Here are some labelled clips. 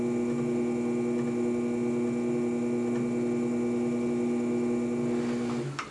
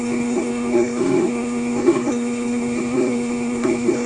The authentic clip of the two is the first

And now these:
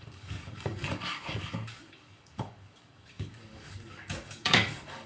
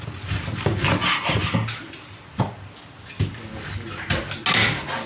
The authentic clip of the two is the second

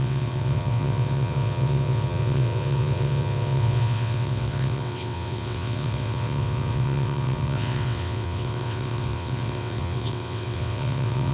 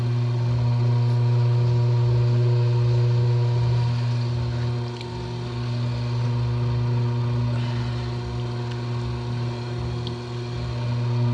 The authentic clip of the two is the second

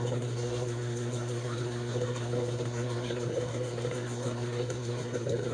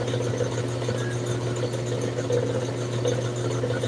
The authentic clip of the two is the second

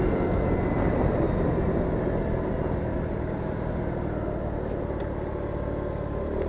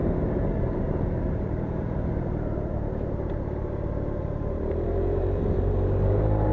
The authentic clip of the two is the first